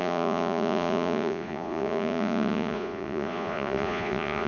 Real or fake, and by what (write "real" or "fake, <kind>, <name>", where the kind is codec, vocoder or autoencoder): fake, vocoder, Vocos